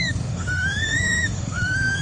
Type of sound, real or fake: fake